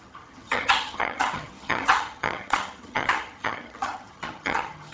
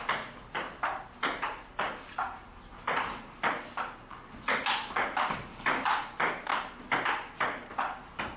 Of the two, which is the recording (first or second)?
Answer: second